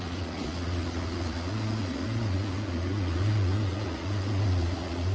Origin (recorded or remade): remade